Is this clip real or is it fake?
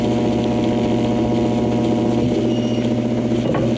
real